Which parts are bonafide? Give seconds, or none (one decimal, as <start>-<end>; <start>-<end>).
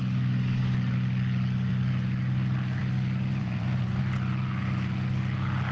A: 0.0-3.3; 4.0-5.7